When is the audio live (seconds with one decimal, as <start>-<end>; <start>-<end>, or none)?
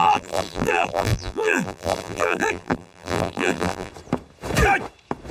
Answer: 3.9-5.3